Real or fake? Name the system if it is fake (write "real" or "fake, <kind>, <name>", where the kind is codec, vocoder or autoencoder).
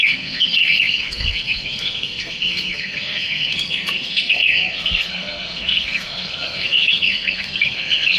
fake, codec, SNAC